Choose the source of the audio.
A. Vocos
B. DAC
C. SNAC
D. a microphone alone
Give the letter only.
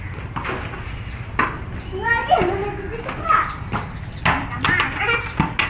D